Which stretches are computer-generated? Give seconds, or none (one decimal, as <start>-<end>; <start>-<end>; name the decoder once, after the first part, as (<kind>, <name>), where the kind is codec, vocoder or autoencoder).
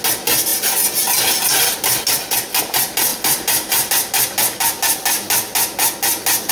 3.1-3.9 (vocoder, BigVGAN v2)